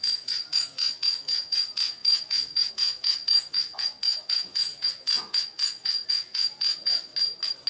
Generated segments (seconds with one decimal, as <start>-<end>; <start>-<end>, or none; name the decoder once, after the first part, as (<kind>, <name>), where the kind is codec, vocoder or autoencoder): 0.0-7.1 (vocoder, Vocos)

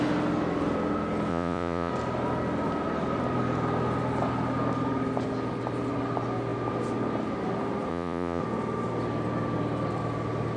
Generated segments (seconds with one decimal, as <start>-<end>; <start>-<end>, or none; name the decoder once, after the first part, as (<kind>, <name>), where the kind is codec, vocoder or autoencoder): 1.3-1.9 (vocoder, Vocos); 7.9-8.4

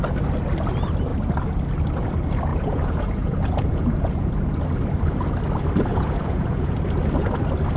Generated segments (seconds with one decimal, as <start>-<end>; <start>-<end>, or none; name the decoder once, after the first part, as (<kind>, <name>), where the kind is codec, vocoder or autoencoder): 2.5-4.3 (vocoder, Vocos); 5.9-6.7

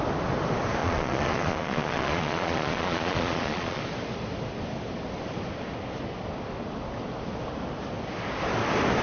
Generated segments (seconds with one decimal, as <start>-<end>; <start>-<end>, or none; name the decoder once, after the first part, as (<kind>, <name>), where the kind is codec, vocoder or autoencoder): 0.8-3.8 (vocoder, Vocos)

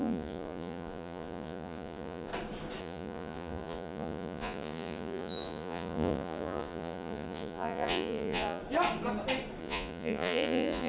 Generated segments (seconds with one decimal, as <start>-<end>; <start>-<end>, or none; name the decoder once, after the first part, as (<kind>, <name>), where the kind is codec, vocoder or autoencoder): 0.0-2.3 (vocoder, Vocos); 2.8-8.6; 9.6-10.9

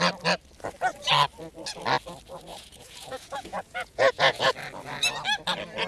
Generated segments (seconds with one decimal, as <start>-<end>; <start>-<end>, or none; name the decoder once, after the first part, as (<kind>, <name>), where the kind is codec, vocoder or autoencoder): 2.5-4.5 (vocoder, Vocos)